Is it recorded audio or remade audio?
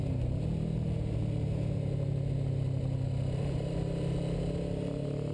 recorded